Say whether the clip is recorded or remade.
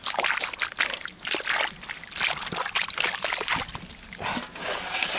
recorded